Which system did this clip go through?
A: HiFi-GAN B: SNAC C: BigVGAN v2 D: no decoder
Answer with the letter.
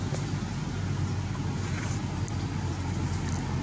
D